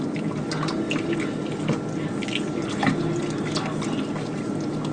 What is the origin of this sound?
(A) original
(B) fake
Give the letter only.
A